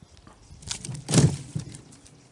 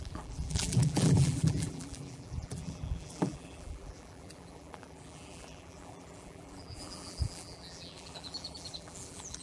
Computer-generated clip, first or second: second